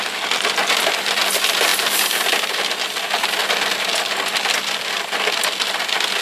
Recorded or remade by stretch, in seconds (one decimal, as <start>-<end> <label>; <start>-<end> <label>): 0.0-6.2 recorded